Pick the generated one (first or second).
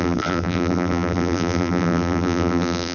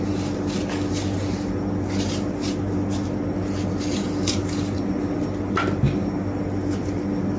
first